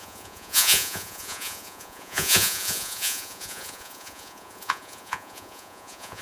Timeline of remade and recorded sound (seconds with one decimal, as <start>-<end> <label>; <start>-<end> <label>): 0.0-6.2 remade